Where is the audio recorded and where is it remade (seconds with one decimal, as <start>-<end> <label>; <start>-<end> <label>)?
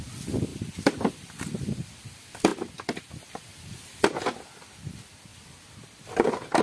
0.0-0.5 recorded; 0.5-1.3 remade; 1.3-5.3 recorded; 5.3-6.6 remade